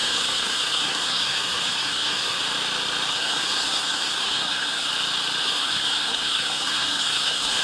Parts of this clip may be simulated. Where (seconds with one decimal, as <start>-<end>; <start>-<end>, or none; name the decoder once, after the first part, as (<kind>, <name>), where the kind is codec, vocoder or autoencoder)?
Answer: 0.0-2.4 (codec, SNAC); 3.1-4.9; 5.4-7.6